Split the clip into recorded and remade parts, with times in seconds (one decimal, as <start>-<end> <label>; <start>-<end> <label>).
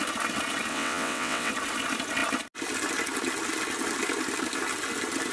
0.0-0.7 recorded; 0.7-1.5 remade; 1.5-5.3 recorded